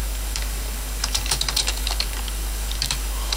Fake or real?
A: fake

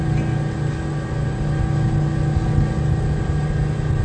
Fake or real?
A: real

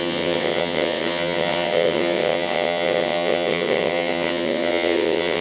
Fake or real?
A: fake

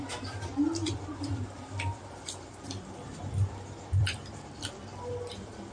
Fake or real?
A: fake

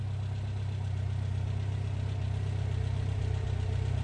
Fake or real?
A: real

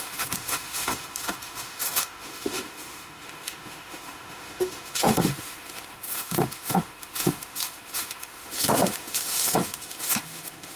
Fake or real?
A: fake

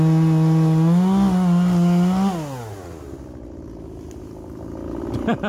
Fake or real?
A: real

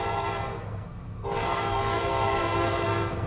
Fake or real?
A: fake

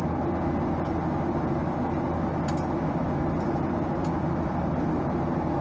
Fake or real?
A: real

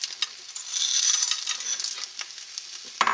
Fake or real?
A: real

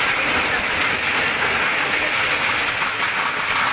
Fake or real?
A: real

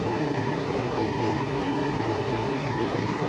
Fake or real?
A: fake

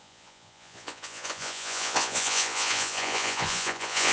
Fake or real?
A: fake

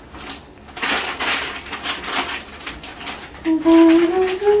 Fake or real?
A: real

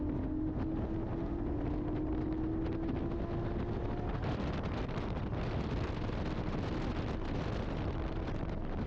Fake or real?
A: real